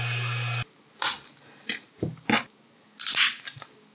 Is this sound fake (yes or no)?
no